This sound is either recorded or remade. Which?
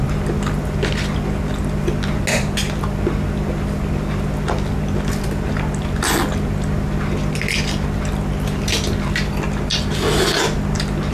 recorded